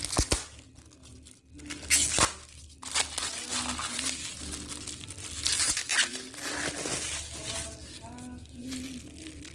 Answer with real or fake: real